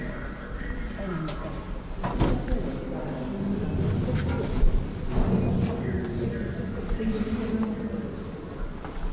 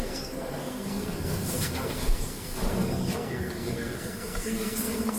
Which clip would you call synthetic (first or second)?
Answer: second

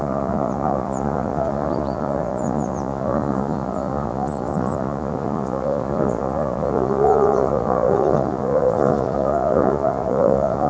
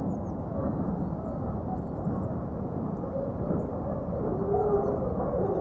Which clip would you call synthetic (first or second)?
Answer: first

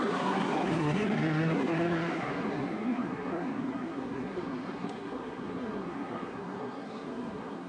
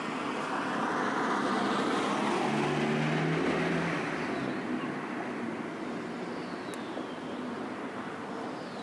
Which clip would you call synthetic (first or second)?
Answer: first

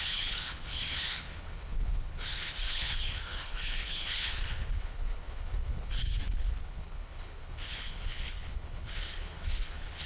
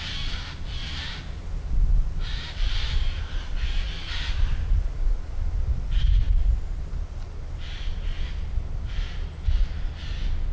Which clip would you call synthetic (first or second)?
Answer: first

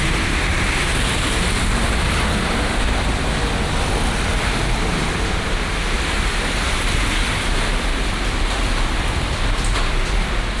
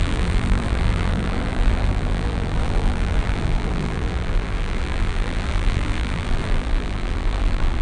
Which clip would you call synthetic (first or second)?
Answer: second